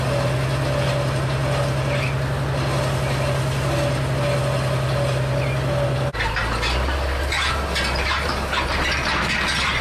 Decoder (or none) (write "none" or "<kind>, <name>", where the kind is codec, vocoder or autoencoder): none